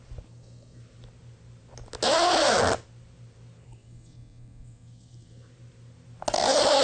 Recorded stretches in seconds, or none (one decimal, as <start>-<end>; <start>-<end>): 0.0-6.8

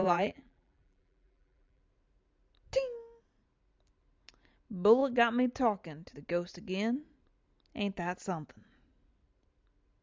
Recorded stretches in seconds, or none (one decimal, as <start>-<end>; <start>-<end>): 1.8-10.0

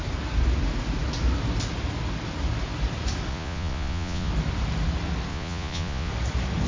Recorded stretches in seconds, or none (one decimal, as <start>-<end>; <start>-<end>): 0.0-3.3; 4.3-5.3; 6.1-6.7

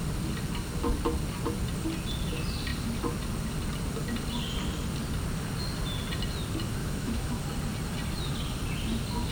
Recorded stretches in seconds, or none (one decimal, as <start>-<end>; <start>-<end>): 0.0-6.8; 7.4-9.3

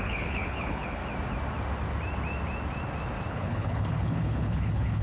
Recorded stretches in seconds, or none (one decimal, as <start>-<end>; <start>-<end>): 1.0-3.3

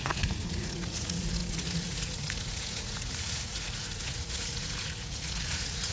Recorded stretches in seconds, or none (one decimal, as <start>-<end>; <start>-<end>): none

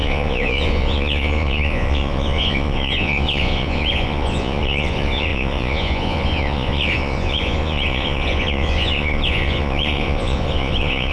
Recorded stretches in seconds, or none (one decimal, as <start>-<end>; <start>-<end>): none

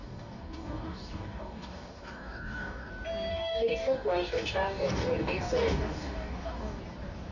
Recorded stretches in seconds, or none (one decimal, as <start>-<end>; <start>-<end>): 2.9-3.3; 6.8-7.3